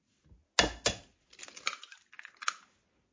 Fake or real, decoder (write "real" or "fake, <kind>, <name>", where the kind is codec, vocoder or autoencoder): real